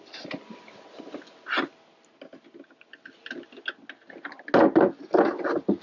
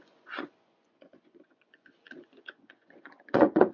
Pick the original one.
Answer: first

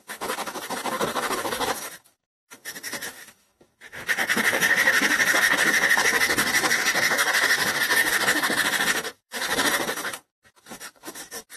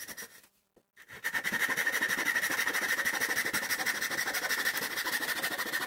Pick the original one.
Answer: second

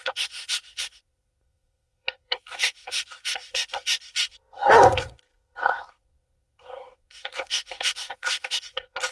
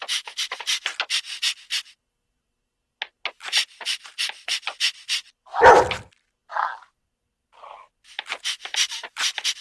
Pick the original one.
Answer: second